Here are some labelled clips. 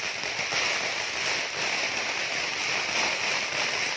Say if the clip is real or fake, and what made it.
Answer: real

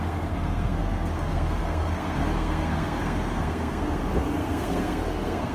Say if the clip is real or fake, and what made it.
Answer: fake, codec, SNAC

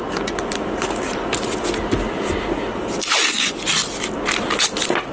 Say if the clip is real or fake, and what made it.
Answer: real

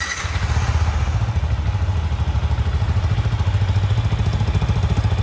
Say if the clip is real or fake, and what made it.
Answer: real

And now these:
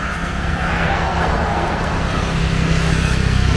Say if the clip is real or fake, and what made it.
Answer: fake, codec, SNAC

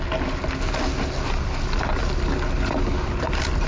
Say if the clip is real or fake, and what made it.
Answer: real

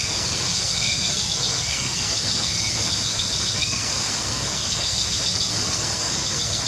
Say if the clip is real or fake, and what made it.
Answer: fake, codec, SNAC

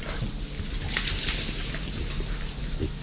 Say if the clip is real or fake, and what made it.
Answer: real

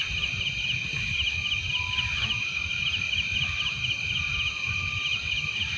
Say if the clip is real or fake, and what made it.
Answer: real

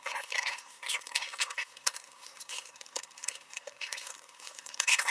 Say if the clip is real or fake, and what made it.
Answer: fake, codec, SNAC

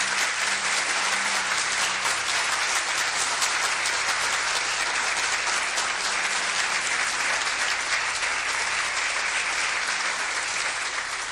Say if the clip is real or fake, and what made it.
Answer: real